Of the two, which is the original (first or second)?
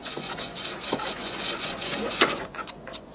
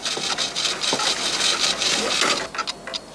second